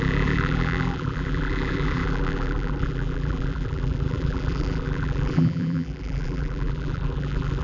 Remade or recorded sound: remade